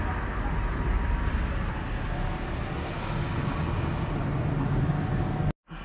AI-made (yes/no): no